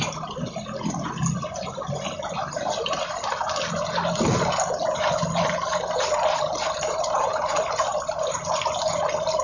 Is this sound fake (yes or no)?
no